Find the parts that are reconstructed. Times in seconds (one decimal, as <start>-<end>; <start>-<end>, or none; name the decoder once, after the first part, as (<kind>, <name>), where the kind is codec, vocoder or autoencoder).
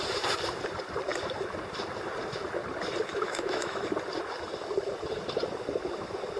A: 3.1-3.8 (autoencoder, DAC-VAE)